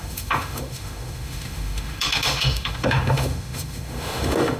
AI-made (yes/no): yes